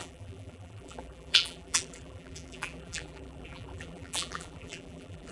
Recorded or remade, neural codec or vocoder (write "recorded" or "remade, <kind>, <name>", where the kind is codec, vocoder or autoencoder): remade, vocoder, BigVGAN v2